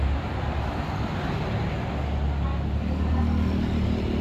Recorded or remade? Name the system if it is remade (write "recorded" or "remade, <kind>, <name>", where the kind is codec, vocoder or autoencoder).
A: recorded